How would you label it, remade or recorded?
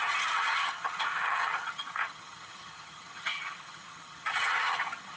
remade